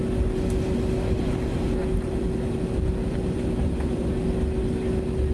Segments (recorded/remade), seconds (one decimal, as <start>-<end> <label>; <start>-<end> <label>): 0.0-5.3 recorded